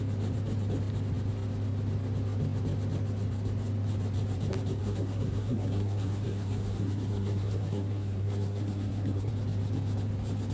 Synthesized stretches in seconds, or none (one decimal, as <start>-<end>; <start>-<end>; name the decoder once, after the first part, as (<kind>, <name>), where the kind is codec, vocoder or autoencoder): 4.8-9.3 (codec, SNAC)

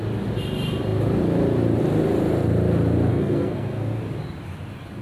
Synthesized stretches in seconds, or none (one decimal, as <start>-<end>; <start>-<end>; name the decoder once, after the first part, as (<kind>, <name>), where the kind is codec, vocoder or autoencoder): 3.1-4.0 (codec, SNAC)

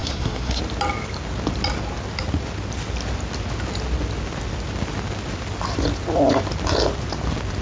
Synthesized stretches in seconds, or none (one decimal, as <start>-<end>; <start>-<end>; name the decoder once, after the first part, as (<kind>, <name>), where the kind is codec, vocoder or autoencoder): 0.0-0.6 (codec, SNAC)

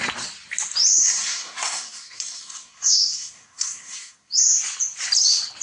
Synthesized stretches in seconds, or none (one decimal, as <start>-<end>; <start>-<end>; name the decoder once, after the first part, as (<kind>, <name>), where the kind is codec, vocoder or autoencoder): 0.9-4.3 (codec, SNAC)

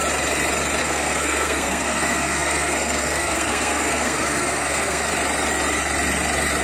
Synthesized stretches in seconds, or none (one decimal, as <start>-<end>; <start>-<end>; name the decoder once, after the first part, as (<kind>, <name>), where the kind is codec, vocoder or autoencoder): 0.8-5.1 (codec, SNAC)

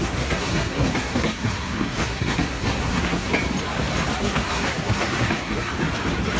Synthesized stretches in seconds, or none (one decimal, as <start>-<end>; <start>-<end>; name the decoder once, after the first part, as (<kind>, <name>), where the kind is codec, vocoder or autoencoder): 0.0-3.3 (codec, SNAC); 4.2-5.7

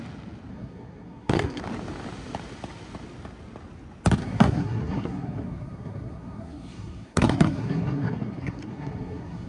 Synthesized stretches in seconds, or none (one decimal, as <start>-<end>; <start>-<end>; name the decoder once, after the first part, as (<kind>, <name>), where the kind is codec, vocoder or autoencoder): 0.5-1.6 (codec, SNAC); 4.2-9.5